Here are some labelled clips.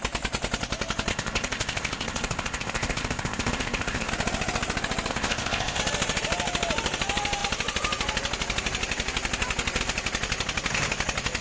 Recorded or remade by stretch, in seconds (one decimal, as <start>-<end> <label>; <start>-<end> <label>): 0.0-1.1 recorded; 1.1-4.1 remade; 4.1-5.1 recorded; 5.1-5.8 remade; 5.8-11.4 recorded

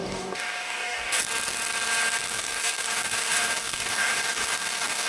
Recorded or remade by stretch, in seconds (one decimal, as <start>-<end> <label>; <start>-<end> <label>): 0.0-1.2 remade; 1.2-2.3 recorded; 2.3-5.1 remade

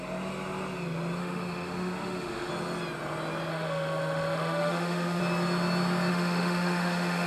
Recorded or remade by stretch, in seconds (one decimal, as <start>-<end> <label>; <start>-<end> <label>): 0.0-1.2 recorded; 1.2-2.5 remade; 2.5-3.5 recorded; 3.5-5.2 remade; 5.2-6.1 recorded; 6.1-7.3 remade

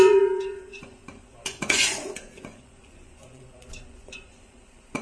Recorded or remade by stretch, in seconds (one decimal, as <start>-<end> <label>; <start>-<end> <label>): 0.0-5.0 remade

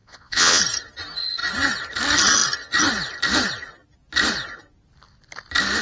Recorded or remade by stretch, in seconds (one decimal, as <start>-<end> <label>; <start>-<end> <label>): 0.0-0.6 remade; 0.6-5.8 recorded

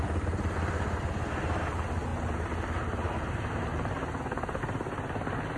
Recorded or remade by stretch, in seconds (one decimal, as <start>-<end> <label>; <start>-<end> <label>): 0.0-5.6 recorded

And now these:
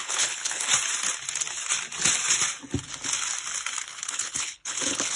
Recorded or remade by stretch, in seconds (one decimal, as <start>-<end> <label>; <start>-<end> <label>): 0.0-0.7 remade; 0.7-3.8 recorded; 3.8-5.2 remade

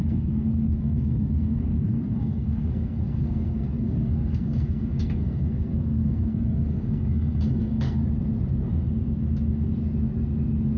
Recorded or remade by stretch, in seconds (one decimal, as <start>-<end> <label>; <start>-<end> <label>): 0.0-8.0 remade; 8.0-10.8 recorded